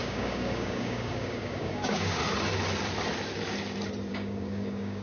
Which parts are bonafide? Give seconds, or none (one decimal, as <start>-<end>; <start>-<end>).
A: 2.2-4.1